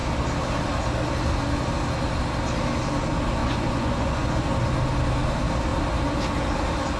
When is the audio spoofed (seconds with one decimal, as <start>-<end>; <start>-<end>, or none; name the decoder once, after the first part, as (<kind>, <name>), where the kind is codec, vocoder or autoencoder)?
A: 3.4-4.4 (vocoder, Vocos)